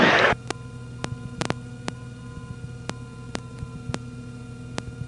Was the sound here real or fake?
real